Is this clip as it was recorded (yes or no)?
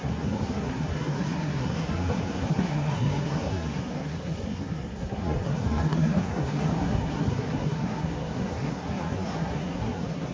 no